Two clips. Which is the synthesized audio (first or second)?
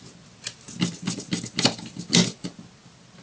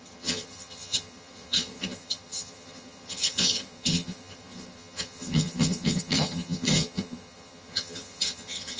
second